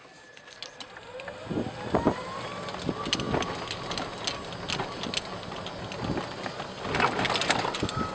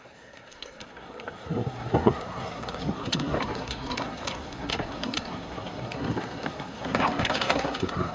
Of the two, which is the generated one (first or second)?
second